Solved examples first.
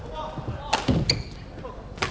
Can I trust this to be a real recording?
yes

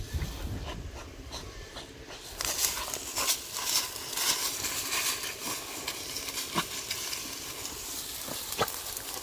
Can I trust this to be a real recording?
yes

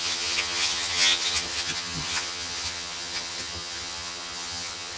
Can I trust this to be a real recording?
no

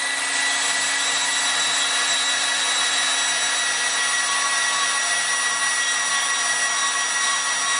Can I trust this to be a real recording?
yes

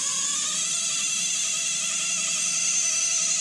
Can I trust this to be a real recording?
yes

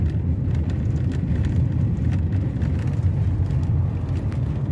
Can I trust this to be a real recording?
yes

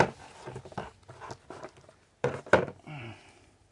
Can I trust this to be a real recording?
yes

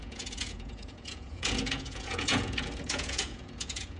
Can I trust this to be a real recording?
no